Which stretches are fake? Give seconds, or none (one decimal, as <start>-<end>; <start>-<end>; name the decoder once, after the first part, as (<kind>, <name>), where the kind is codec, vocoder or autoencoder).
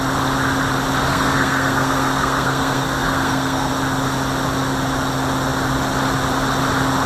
1.1-3.7 (codec, SNAC)